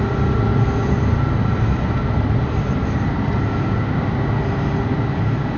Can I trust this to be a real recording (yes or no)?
yes